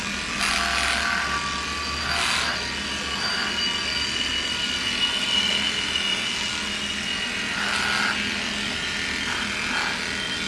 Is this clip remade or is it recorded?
recorded